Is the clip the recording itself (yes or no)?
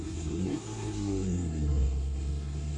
no